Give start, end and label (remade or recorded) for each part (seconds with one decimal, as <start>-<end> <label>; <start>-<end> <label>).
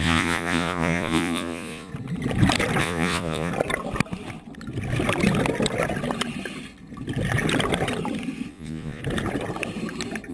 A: 0.0-1.9 remade; 1.9-2.8 recorded; 2.8-3.5 remade; 3.5-8.5 recorded; 8.5-9.0 remade; 9.0-10.3 recorded